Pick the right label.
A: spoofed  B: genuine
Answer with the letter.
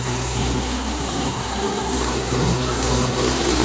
A